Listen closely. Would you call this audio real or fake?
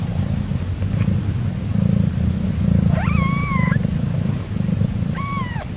real